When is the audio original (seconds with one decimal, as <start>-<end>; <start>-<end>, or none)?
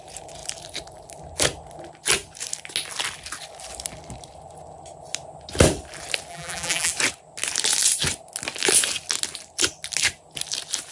0.0-6.3; 6.9-10.9